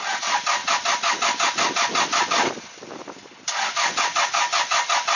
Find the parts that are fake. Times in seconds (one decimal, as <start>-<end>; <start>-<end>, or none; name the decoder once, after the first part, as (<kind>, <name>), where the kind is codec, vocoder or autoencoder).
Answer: none